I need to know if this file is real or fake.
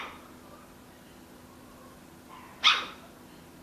real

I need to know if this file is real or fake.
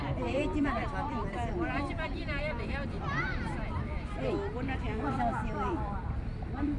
fake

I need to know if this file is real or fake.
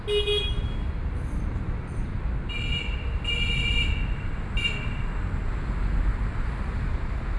real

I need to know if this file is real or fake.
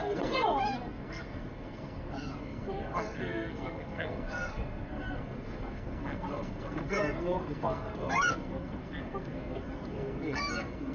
fake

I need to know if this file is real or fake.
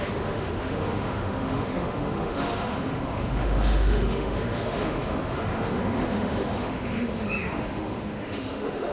fake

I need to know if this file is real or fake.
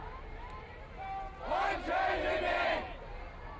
real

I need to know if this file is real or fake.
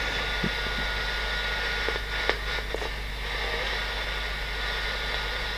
real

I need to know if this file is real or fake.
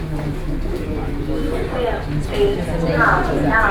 real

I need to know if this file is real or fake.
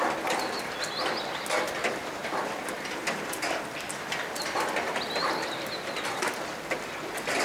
real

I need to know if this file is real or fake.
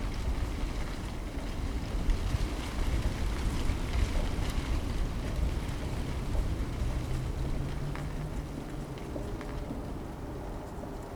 real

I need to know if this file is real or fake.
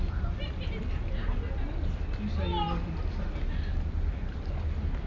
real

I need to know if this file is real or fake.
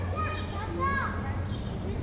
real